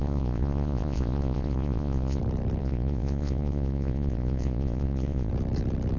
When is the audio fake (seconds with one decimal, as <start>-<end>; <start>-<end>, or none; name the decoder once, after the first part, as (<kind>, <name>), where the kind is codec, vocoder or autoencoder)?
0.0-2.2 (vocoder, Vocos); 2.6-5.3